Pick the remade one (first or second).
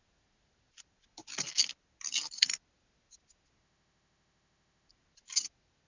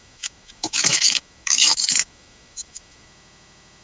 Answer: second